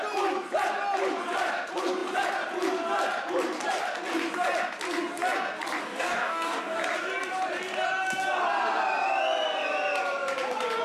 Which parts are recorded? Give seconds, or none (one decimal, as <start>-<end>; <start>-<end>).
0.0-5.8; 6.8-10.8